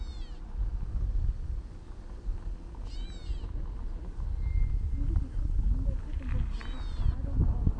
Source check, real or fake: real